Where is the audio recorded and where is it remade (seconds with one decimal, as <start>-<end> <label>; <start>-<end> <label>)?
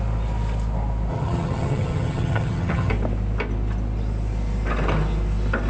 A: 0.0-1.1 recorded; 1.1-2.9 remade; 2.9-5.7 recorded